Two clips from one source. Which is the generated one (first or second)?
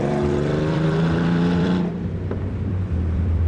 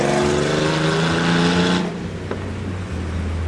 first